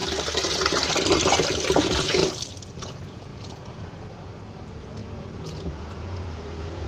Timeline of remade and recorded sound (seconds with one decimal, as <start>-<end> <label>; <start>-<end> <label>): 0.0-1.8 recorded; 1.8-2.2 remade; 2.2-2.8 recorded; 2.8-6.9 remade